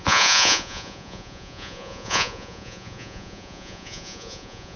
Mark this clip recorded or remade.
remade